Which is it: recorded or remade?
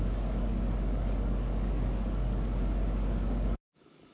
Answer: remade